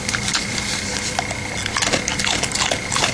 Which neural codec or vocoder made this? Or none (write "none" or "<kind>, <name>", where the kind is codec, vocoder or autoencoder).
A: none